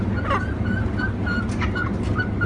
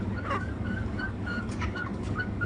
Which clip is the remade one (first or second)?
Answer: second